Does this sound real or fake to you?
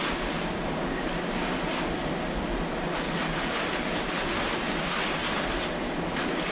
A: real